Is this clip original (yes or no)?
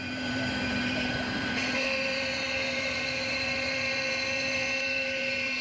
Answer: no